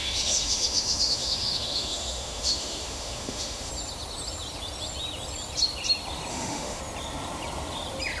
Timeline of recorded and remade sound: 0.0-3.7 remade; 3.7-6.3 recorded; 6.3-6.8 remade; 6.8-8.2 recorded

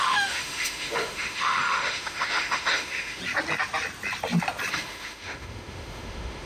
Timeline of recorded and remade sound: 0.0-3.2 remade; 3.2-4.7 recorded; 4.7-6.5 remade